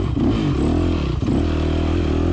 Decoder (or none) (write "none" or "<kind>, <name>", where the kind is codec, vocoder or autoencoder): none